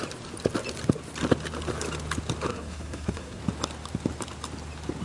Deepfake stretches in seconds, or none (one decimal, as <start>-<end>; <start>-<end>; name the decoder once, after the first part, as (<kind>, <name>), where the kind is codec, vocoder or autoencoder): 2.5-3.4 (codec, SNAC)